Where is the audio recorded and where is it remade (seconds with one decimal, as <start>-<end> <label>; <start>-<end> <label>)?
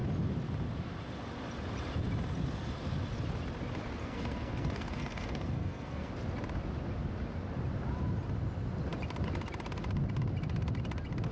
0.0-4.0 recorded; 4.0-6.1 remade; 6.1-11.3 recorded